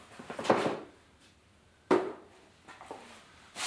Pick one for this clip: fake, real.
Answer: fake